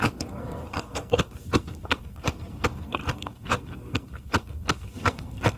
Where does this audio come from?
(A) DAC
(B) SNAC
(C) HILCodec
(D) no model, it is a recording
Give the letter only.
B